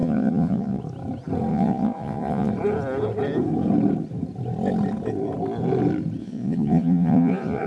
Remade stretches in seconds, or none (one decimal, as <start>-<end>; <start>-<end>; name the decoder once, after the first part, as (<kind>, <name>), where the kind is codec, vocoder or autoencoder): 0.0-0.8 (vocoder, Vocos); 1.5-2.5; 6.2-7.7